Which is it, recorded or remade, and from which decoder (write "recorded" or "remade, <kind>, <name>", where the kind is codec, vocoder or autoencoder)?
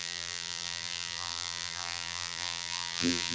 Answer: remade, vocoder, BigVGAN v2